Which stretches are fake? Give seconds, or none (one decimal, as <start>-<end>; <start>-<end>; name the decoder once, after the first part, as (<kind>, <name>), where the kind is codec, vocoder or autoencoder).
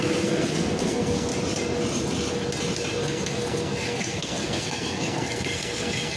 0.0-1.3 (codec, SNAC); 3.0-6.2